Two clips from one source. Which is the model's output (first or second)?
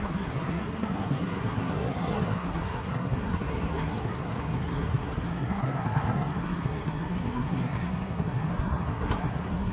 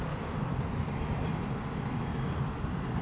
first